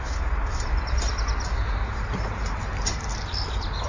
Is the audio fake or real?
real